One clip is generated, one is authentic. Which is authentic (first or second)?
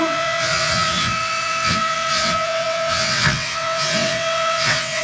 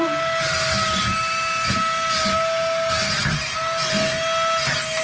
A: second